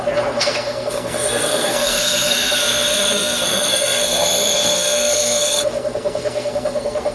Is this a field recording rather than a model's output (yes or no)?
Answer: no